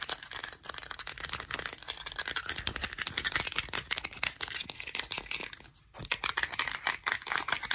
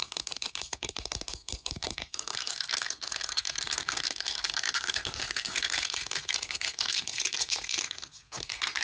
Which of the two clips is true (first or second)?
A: first